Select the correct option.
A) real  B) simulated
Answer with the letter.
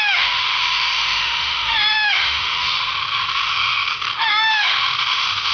B